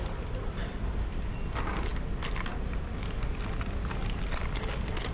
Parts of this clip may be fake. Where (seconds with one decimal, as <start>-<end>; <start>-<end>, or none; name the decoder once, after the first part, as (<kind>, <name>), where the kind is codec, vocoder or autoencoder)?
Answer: none